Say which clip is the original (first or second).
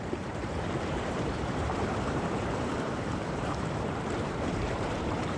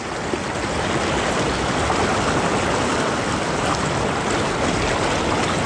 second